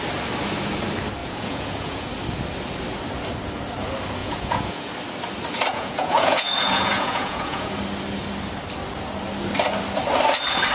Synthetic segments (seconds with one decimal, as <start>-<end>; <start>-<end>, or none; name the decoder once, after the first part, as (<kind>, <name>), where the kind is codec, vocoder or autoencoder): 1.2-2.1 (vocoder, Vocos); 4.2-4.9; 5.7-7.8